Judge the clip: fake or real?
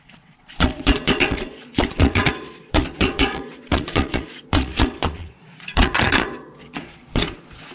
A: fake